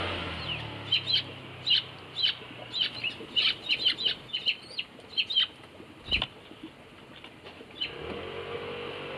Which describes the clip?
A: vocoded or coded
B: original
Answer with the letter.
B